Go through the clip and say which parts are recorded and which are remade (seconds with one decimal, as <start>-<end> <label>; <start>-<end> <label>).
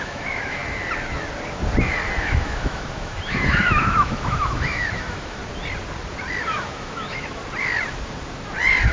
0.0-0.6 remade; 0.6-2.2 recorded; 2.2-5.4 remade; 5.4-6.4 recorded; 6.4-7.4 remade; 7.4-8.9 recorded